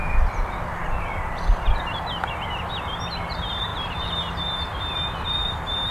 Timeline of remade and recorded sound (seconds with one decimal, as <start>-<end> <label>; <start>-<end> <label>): 0.0-5.9 recorded